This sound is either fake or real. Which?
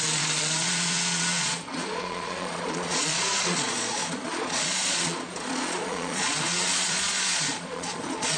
fake